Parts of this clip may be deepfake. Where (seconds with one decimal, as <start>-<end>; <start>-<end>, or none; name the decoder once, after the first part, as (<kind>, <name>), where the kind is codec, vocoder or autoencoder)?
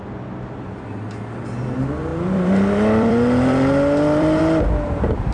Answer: 2.1-4.4 (vocoder, BigVGAN v2)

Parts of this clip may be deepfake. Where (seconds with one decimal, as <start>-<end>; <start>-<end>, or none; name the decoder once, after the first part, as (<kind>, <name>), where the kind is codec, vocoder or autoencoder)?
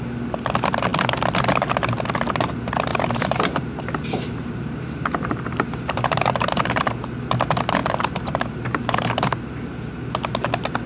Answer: 2.9-6.9 (vocoder, BigVGAN v2); 7.8-9.5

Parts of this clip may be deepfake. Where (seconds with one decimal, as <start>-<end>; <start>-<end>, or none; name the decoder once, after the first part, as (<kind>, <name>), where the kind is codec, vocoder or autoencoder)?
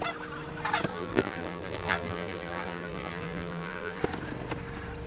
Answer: 0.9-4.0 (vocoder, BigVGAN v2)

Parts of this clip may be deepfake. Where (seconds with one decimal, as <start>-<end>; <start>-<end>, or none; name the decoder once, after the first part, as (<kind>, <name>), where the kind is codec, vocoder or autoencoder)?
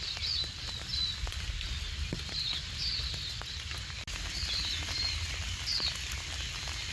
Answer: none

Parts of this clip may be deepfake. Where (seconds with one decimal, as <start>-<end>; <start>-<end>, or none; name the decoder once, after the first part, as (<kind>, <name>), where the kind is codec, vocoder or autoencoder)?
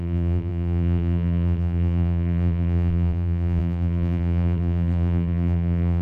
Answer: 0.0-6.0 (vocoder, BigVGAN v2)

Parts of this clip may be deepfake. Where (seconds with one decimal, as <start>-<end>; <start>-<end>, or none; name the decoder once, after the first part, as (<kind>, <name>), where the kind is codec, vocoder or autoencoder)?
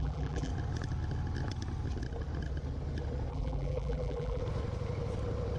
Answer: 0.0-0.5 (vocoder, BigVGAN v2); 3.3-4.4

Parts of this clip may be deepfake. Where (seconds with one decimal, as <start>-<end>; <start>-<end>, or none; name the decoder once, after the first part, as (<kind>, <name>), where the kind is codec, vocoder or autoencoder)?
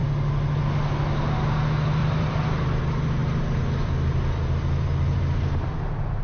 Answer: 2.0-2.8 (vocoder, BigVGAN v2); 3.2-5.5